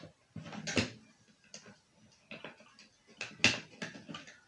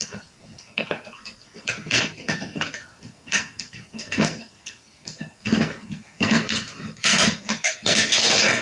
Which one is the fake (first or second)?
second